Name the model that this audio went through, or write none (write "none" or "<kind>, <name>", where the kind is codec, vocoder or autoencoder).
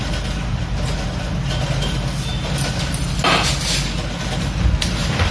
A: none